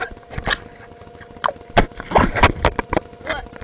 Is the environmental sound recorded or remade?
recorded